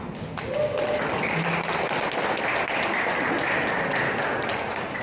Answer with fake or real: real